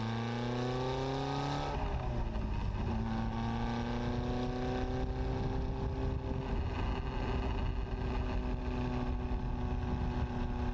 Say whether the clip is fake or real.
real